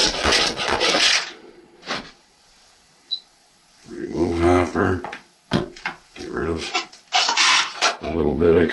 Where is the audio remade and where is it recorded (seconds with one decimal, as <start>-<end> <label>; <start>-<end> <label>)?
0.0-8.7 remade